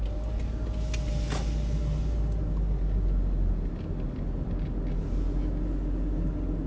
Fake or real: real